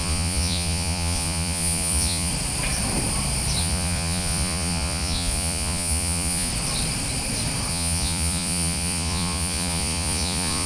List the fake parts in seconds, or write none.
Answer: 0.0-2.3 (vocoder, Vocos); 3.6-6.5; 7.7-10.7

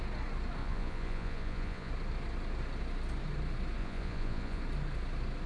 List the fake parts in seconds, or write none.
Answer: 0.6-1.9 (vocoder, Vocos); 3.8-4.6

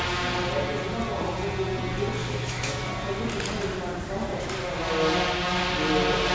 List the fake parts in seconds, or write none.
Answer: 2.2-2.9 (autoencoder, DAC-VAE)

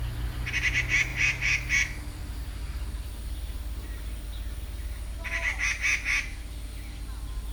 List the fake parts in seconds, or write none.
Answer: none

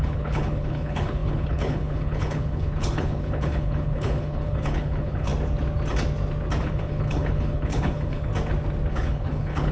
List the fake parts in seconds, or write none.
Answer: 0.0-5.3 (codec, HILCodec); 6.6-8.3; 8.9-9.7

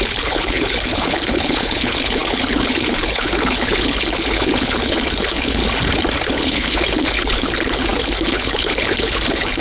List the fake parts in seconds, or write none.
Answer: 0.0-5.6 (codec, HILCodec); 6.3-9.6